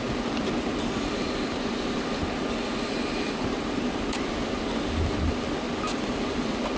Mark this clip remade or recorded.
recorded